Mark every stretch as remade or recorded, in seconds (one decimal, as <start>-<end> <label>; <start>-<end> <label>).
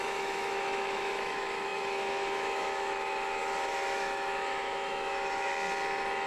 0.0-5.5 remade; 5.5-6.3 recorded